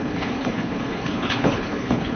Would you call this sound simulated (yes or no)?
yes